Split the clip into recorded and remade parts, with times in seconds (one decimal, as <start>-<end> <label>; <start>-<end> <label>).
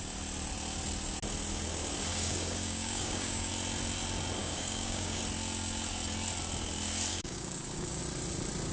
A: 0.0-2.1 recorded; 2.1-3.5 remade; 3.5-4.4 recorded; 4.4-5.2 remade; 5.2-7.1 recorded; 7.1-8.0 remade; 8.0-8.7 recorded